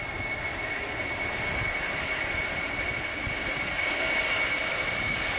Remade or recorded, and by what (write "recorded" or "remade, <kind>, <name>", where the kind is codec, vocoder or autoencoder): recorded